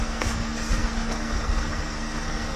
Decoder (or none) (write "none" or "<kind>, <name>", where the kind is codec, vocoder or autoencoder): codec, SNAC